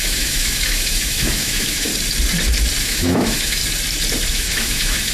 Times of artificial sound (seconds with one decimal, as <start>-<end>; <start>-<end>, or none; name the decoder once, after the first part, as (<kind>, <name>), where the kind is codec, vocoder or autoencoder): 0.0-1.9 (autoencoder, DAC-VAE); 2.8-3.6; 4.3-5.1